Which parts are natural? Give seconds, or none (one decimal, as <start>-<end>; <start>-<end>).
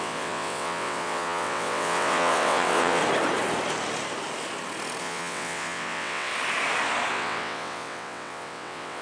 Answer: 3.0-5.0; 6.3-7.1